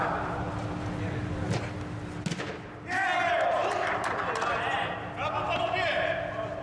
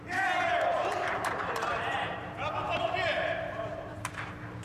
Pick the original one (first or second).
first